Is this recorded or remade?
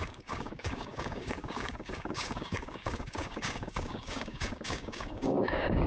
remade